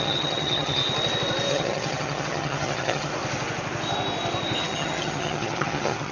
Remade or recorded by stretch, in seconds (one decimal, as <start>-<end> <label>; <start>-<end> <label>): 0.0-0.8 remade; 0.8-1.5 recorded; 1.5-3.1 remade; 3.1-4.6 recorded; 4.6-6.1 remade